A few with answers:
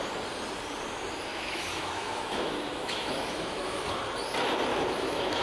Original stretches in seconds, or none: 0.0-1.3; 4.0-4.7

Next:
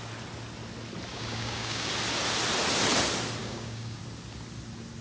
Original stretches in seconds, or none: 0.0-1.1; 1.9-3.4; 4.0-5.0

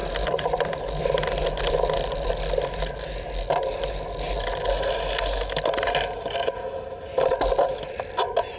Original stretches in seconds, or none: 1.0-8.6